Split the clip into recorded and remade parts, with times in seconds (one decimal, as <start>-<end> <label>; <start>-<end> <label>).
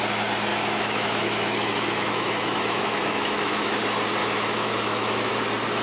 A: 0.0-0.5 recorded; 0.5-3.8 remade; 3.8-4.2 recorded; 4.2-5.3 remade; 5.3-5.8 recorded